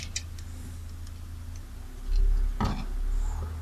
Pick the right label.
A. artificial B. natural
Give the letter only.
B